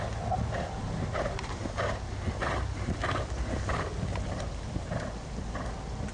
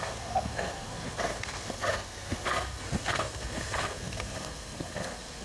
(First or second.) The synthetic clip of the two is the second